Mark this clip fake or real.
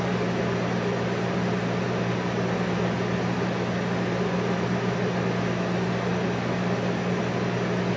real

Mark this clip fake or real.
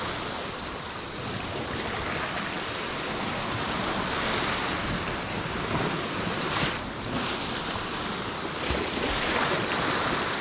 real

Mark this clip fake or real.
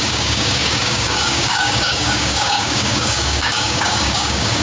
fake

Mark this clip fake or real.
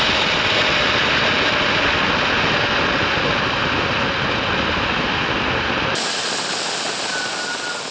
real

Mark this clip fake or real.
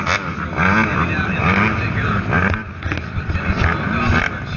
real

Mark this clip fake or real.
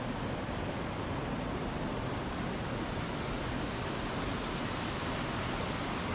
real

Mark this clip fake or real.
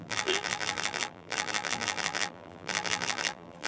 fake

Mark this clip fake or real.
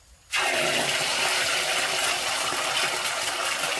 real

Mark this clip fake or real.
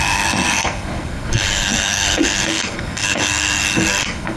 fake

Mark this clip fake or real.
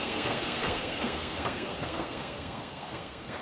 fake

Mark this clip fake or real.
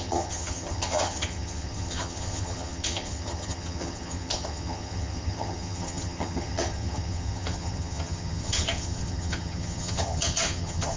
fake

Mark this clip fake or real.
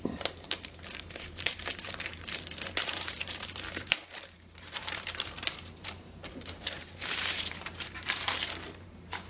fake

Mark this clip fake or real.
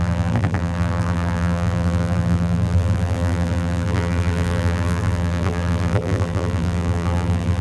fake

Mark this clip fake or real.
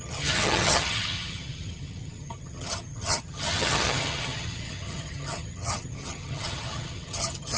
fake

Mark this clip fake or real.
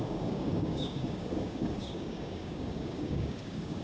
fake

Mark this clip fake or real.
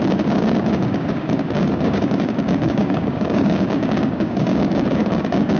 fake